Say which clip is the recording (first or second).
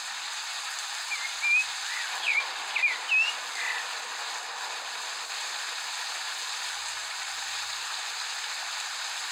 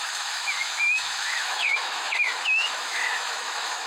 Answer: first